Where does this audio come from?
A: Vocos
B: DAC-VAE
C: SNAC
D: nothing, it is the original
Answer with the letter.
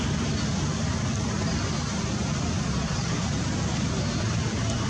D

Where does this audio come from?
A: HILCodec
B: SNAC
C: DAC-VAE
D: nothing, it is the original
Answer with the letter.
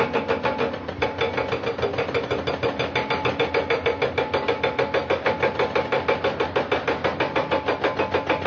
D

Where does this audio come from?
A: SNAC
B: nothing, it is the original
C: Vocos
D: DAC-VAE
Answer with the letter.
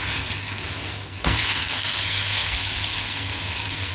A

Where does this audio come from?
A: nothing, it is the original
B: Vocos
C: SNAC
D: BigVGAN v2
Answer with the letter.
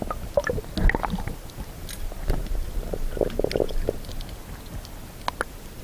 A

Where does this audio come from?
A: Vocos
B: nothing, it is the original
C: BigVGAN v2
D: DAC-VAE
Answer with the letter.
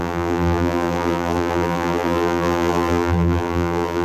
C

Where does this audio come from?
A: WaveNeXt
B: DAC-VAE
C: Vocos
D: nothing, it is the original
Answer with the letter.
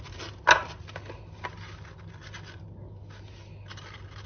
D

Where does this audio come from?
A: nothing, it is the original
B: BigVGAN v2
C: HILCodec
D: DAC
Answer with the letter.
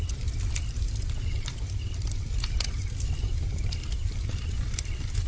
B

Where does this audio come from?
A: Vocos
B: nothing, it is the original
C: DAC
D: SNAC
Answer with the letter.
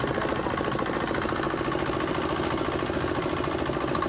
B